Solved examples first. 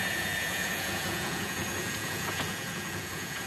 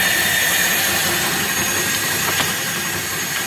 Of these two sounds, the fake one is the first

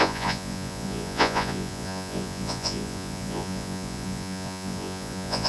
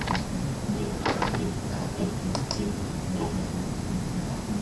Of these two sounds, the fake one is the first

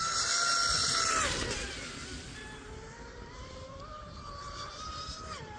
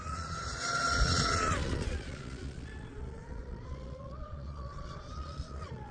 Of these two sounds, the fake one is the second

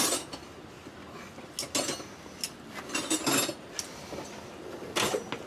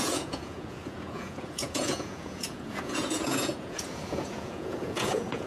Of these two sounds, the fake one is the second